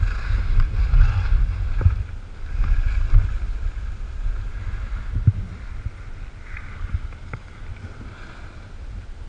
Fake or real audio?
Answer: real